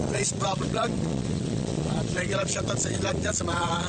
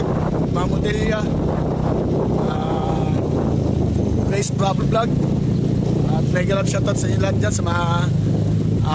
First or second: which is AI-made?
first